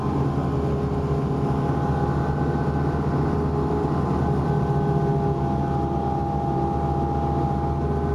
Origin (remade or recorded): recorded